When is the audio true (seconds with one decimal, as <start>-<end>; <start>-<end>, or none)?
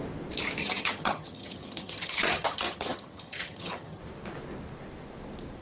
0.0-0.6; 4.0-5.6